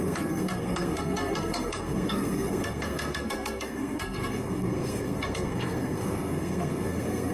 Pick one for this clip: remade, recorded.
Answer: remade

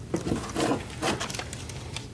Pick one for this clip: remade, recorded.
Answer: recorded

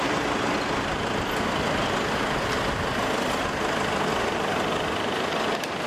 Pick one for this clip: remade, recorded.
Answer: recorded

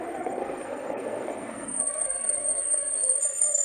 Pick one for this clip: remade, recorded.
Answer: remade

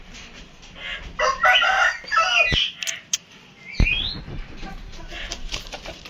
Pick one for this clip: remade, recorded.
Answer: recorded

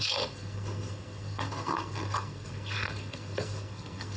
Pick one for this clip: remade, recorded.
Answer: remade